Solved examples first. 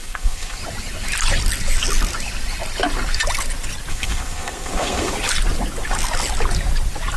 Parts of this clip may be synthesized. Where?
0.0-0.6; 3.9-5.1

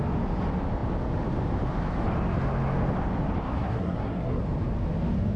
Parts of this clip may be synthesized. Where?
3.5-4.4

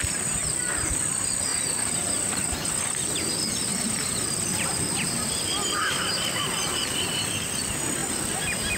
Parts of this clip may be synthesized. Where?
1.5-2.7; 3.7-5.6

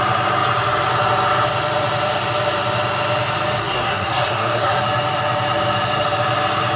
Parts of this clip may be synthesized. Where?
3.6-4.8

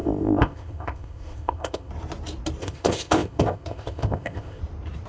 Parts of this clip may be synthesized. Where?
0.0-1.9; 2.6-4.6

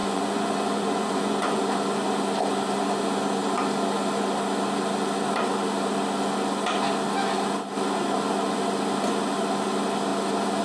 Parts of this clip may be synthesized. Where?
0.0-1.6